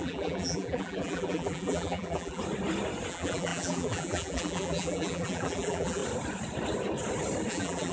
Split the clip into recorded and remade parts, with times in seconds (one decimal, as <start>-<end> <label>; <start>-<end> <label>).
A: 0.0-2.4 remade; 2.4-3.1 recorded; 3.1-6.0 remade; 6.0-7.5 recorded; 7.5-7.9 remade

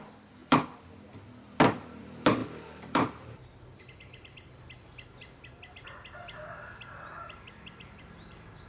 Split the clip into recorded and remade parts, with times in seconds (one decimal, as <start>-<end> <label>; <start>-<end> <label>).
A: 0.0-2.4 recorded; 2.4-3.7 remade; 3.7-8.7 recorded